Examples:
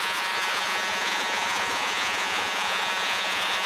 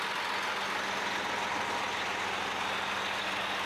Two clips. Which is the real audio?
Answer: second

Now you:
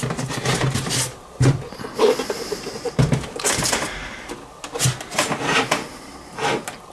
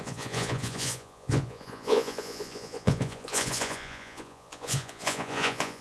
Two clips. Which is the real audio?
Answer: first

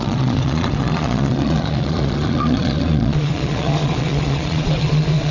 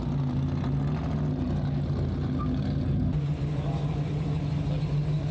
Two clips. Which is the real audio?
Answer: second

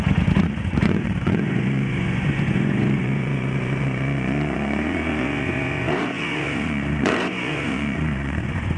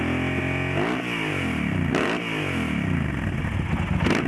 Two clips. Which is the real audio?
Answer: second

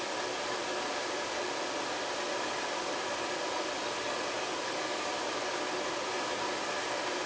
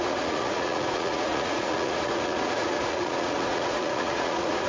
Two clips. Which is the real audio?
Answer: first